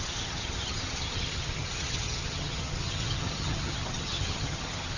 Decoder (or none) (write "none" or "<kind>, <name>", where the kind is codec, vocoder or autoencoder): vocoder, HiFi-GAN